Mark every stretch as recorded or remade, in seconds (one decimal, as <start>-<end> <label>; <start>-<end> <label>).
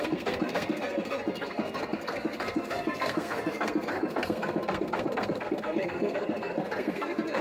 0.0-7.4 remade